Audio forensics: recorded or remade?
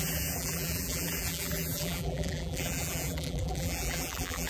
remade